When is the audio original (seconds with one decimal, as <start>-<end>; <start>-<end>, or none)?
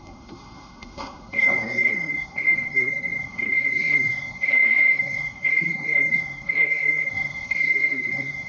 none